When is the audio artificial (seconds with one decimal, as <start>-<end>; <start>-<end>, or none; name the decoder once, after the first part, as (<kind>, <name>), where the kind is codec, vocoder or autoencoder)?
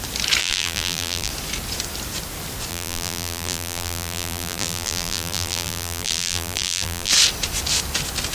0.4-1.3 (vocoder, BigVGAN v2); 2.7-7.1